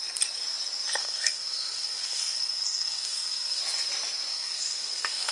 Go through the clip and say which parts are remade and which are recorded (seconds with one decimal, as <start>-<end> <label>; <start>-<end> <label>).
0.0-1.0 recorded; 1.0-3.6 remade; 3.6-4.3 recorded; 4.3-5.3 remade